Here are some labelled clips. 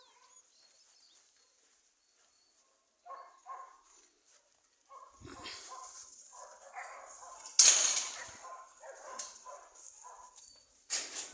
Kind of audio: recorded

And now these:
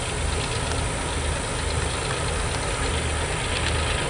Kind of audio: recorded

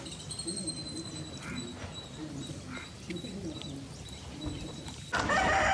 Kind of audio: recorded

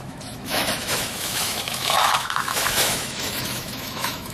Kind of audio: remade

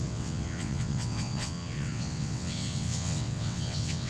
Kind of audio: remade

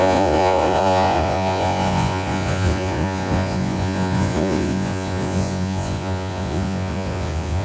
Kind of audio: remade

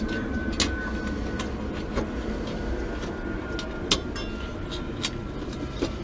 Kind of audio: recorded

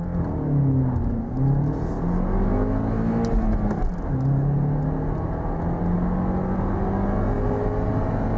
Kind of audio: recorded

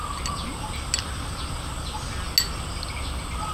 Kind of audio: recorded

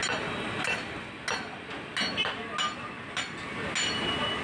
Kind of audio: recorded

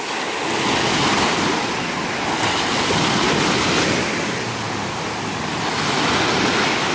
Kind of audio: recorded